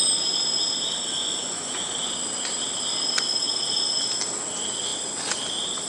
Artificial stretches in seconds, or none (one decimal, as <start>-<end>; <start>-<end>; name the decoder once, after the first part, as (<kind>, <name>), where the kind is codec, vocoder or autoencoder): 1.2-2.1 (vocoder, Vocos)